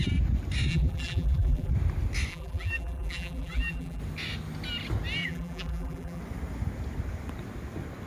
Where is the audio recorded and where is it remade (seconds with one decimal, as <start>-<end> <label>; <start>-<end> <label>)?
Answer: 0.0-0.7 recorded; 0.7-1.7 remade; 1.7-2.3 recorded; 2.3-4.0 remade; 4.0-5.2 recorded; 5.2-6.2 remade; 6.2-8.1 recorded